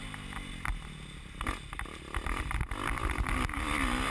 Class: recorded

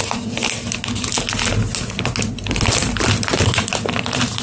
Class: recorded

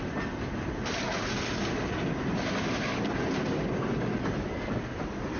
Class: recorded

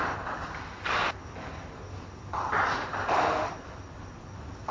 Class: recorded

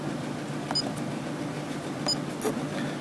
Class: recorded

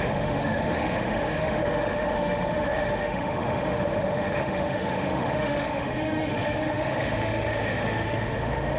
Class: remade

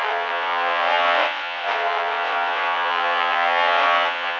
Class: remade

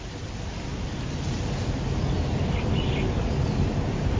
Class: recorded